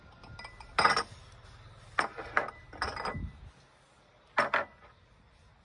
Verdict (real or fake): real